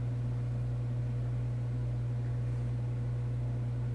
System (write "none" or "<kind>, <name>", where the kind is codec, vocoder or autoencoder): none